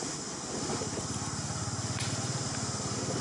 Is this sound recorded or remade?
recorded